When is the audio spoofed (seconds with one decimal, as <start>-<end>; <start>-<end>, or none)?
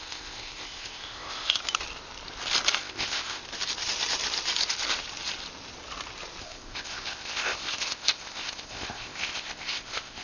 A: 0.0-1.6; 2.8-3.4; 6.4-10.2